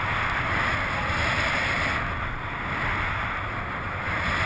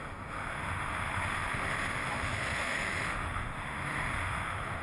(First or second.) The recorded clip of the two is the first